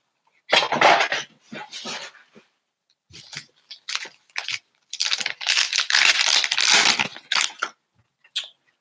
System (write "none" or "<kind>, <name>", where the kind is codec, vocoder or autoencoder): none